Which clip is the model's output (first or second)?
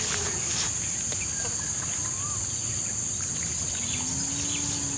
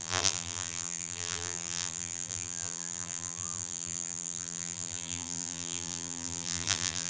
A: second